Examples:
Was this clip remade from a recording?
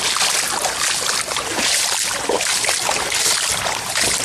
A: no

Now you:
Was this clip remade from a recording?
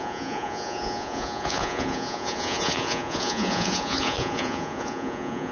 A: yes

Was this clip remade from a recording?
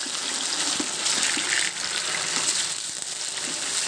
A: no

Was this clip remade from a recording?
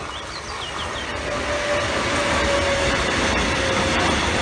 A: no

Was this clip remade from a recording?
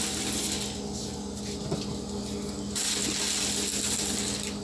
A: no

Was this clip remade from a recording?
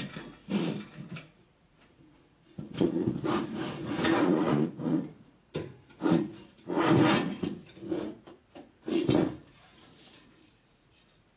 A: yes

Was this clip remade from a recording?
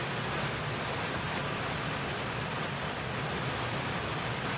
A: no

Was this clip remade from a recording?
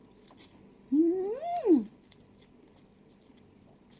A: no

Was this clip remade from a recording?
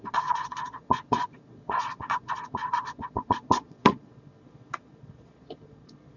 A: yes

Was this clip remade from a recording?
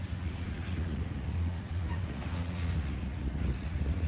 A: yes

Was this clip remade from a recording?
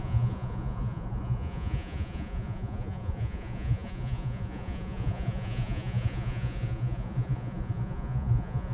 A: yes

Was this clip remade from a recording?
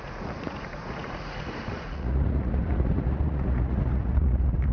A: yes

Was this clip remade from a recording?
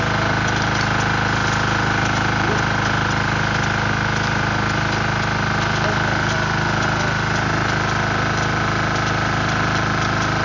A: no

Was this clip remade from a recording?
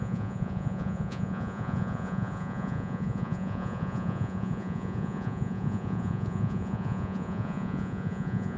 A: yes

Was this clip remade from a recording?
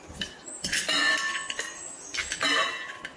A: no